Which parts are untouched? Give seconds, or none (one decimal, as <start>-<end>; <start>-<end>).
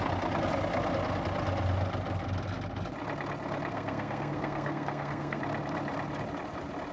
0.0-3.7; 5.4-6.9